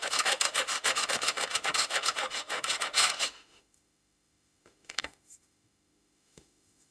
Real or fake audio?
fake